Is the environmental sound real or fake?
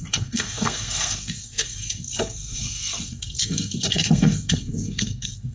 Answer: fake